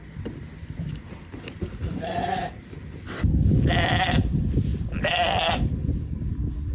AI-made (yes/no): yes